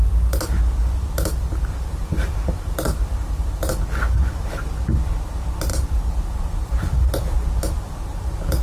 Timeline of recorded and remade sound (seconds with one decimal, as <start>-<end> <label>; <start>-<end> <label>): 0.0-0.8 recorded; 0.8-3.8 remade; 3.8-5.7 recorded; 5.7-7.1 remade; 7.1-8.6 recorded